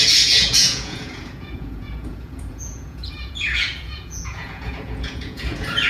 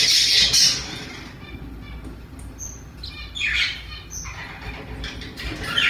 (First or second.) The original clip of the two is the second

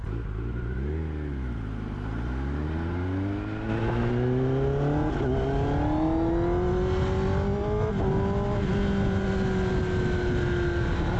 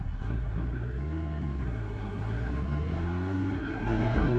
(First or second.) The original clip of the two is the first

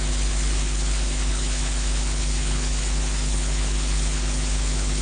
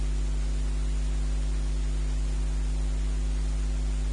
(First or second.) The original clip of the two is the second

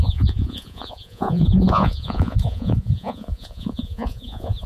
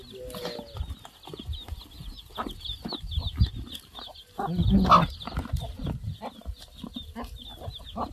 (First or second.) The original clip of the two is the second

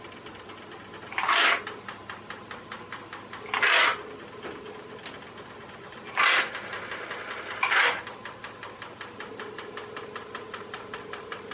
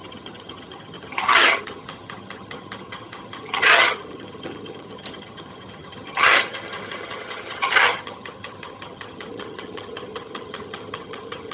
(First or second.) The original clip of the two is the first